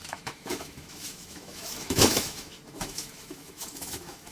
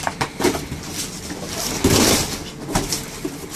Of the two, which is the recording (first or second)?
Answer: second